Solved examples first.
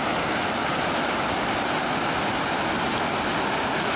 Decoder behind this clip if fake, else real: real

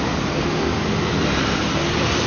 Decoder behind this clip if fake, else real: real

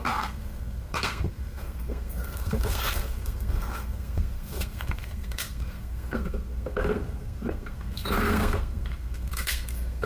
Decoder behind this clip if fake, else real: fake, codec, SNAC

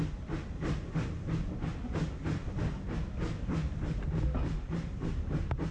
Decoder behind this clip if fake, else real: real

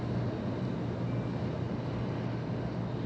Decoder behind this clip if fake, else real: real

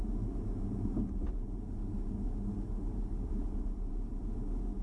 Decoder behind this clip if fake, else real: real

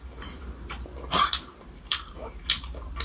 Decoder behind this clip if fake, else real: fake, vocoder, BigVGAN v2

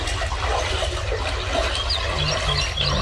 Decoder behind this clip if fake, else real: real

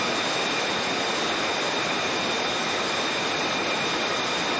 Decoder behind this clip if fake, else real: real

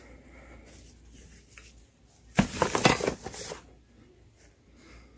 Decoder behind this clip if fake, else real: real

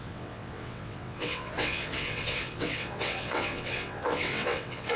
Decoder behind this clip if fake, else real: fake, vocoder, WaveNeXt